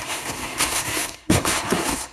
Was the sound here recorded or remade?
remade